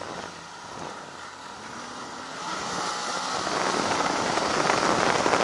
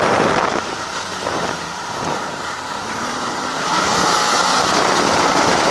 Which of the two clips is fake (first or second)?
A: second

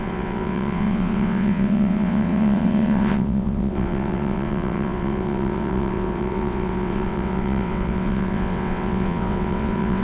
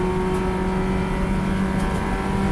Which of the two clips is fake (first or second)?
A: first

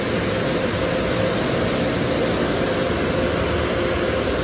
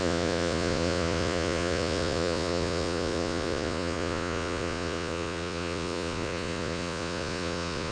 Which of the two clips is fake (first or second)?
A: second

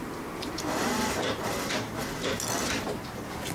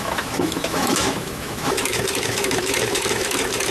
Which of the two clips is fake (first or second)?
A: second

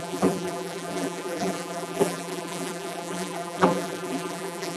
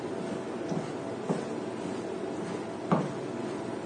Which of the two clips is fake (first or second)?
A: first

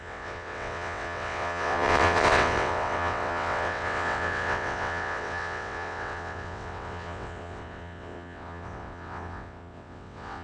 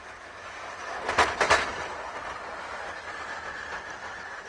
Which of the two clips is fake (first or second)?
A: first